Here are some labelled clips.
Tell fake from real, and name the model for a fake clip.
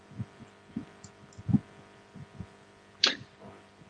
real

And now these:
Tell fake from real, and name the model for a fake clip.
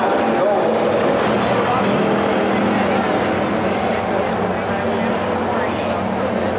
real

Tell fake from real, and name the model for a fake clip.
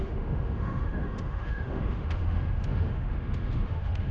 fake, autoencoder, DAC-VAE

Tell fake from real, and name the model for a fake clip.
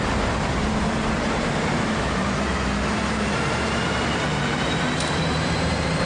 fake, vocoder, BigVGAN v2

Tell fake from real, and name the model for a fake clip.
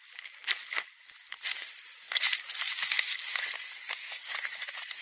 real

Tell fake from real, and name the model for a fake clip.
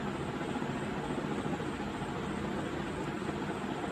real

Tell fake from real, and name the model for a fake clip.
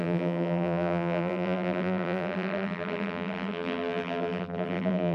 fake, vocoder, BigVGAN v2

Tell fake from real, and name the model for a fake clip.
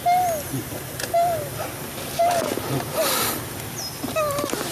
real